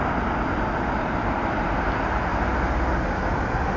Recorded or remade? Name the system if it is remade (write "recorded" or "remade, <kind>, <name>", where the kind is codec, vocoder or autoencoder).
recorded